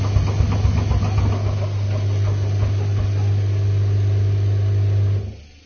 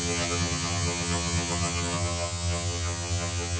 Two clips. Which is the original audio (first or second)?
first